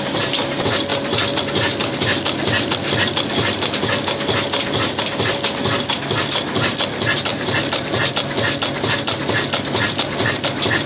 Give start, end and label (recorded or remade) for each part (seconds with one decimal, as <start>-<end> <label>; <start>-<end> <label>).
0.0-7.3 recorded; 7.3-8.1 remade; 8.1-10.9 recorded